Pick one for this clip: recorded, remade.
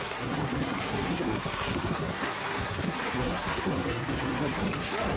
remade